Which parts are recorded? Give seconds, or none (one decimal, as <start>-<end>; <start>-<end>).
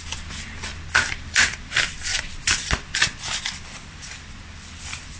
0.0-0.7; 1.7-2.1